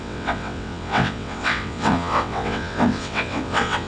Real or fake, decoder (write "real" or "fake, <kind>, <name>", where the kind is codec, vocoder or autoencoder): fake, vocoder, WaveNeXt